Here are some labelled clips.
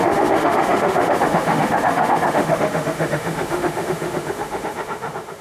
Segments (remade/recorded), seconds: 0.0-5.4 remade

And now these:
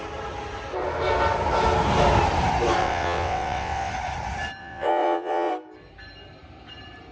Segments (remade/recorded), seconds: 0.0-2.8 recorded; 2.8-3.9 remade; 3.9-4.6 recorded; 4.6-5.5 remade; 5.5-7.1 recorded

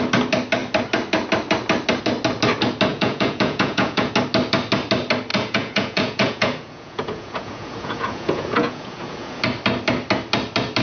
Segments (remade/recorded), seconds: 0.0-2.9 recorded; 2.9-4.1 remade; 4.1-5.3 recorded; 5.3-9.4 remade; 9.4-10.8 recorded

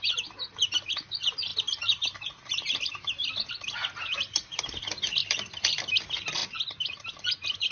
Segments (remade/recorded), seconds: 0.0-1.5 recorded; 1.5-3.5 remade; 3.5-5.2 recorded; 5.2-5.9 remade; 5.9-7.7 recorded

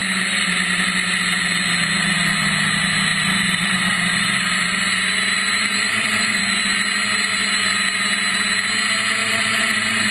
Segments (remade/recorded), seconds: 0.0-3.1 recorded; 3.1-6.4 remade; 6.4-9.2 recorded; 9.2-10.1 remade

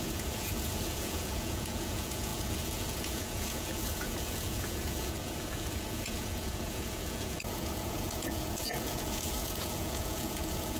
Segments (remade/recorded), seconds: 0.0-10.8 remade

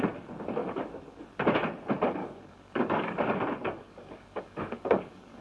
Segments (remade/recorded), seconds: 0.0-0.6 recorded; 0.6-1.2 remade; 1.2-2.2 recorded; 2.2-3.2 remade; 3.2-3.6 recorded; 3.6-5.4 remade

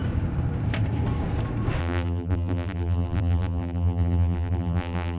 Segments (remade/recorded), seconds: 0.0-1.8 recorded; 1.8-5.2 remade